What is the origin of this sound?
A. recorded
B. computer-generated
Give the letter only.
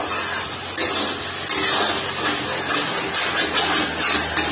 A